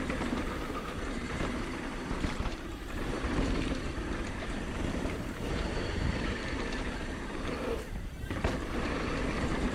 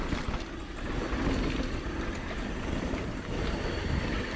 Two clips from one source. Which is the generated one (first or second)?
first